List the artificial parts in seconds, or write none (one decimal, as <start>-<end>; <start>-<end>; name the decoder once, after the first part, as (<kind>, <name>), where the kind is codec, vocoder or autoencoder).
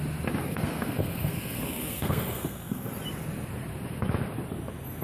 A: 0.4-2.9 (codec, SNAC)